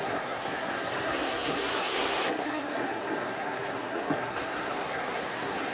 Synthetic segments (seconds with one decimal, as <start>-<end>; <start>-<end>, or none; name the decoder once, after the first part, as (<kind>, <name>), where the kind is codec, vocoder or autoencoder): 0.0-5.7 (codec, SNAC)